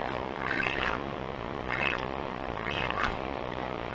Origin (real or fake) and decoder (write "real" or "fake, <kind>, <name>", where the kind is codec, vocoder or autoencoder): fake, vocoder, Vocos